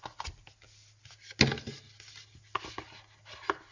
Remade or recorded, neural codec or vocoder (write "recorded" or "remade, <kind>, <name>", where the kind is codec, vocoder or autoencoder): recorded